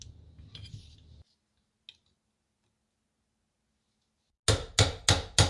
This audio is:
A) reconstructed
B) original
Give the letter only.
B